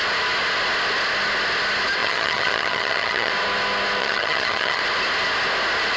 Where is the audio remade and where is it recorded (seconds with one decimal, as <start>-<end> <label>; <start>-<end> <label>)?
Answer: 0.0-2.0 recorded; 2.0-3.3 remade; 3.3-4.0 recorded; 4.0-4.8 remade; 4.8-6.0 recorded